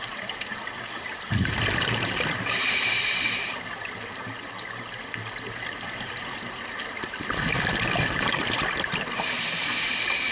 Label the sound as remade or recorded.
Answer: recorded